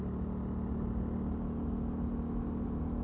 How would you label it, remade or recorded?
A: recorded